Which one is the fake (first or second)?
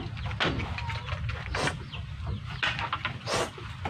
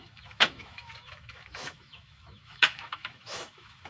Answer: second